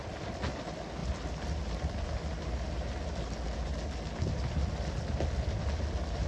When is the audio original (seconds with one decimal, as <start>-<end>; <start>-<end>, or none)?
0.0-6.3